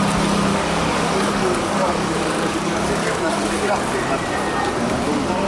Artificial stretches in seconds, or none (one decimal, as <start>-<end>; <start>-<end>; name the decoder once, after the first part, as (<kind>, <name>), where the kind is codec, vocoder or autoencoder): 0.5-3.8 (codec, DAC)

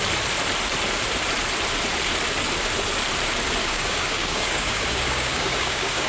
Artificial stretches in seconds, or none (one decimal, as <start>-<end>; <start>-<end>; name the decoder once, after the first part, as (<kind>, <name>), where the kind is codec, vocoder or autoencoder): 3.6-6.1 (codec, DAC)

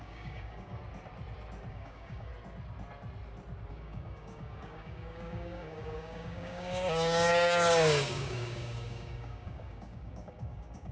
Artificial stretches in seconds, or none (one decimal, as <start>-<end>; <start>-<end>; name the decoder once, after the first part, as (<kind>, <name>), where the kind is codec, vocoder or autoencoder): 0.0-0.8 (codec, DAC); 1.7-2.3; 3.7-10.9

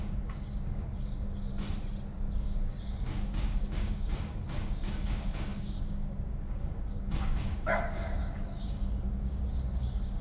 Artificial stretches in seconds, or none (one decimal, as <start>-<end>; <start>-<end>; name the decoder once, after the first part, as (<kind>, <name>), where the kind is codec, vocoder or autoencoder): 0.0-1.5 (codec, DAC); 2.4-10.2

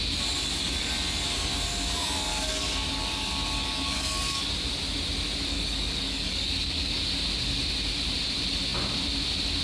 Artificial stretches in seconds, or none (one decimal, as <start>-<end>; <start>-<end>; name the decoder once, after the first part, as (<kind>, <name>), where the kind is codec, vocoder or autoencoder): 0.4-0.9 (codec, DAC); 2.3-4.4; 5.5-7.0

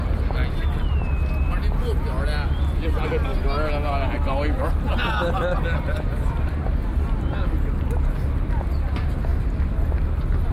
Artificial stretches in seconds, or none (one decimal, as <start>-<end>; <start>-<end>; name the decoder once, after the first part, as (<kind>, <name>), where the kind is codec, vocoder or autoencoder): none

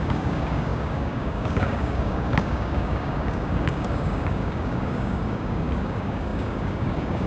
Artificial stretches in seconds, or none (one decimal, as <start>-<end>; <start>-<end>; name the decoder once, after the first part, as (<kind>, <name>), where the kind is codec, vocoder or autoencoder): 0.0-7.3 (codec, DAC)